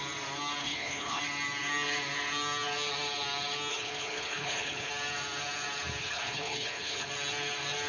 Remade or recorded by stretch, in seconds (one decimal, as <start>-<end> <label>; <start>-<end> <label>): 0.0-0.6 recorded; 0.6-1.2 remade; 1.2-3.7 recorded; 3.7-4.9 remade; 4.9-6.0 recorded; 6.0-7.1 remade; 7.1-7.9 recorded

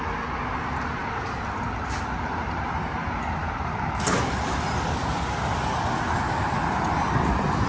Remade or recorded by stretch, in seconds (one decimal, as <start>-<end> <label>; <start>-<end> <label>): 0.0-7.7 recorded

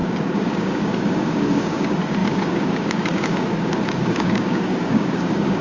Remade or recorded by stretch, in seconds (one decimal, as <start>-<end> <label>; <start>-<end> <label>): 0.0-5.6 remade

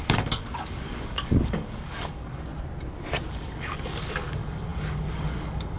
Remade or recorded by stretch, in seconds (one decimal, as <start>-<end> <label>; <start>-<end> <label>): 0.0-2.5 remade; 2.5-3.3 recorded; 3.3-5.8 remade

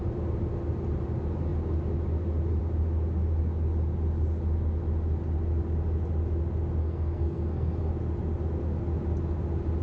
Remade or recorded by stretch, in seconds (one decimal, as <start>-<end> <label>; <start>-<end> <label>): 0.0-6.8 recorded; 6.8-7.9 remade; 7.9-9.8 recorded

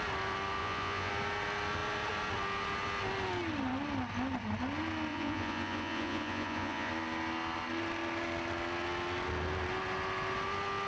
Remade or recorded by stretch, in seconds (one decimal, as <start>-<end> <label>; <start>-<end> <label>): 0.0-0.6 recorded; 0.6-1.1 remade; 1.1-5.1 recorded; 5.1-6.9 remade; 6.9-10.9 recorded

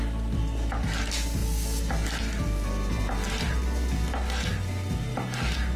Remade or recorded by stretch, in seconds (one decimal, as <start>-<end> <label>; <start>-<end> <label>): 0.0-5.8 recorded

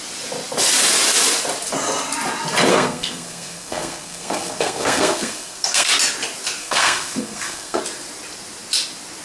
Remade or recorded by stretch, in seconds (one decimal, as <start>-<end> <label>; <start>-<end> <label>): 0.0-2.7 recorded; 2.7-5.9 remade; 5.9-6.6 recorded; 6.6-7.8 remade; 7.8-9.2 recorded